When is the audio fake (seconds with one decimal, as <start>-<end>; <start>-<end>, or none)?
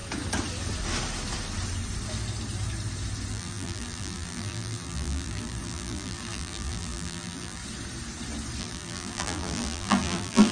3.3-7.6; 8.6-10.5